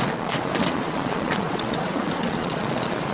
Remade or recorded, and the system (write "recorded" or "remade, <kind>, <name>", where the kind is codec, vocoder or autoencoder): remade, vocoder, Vocos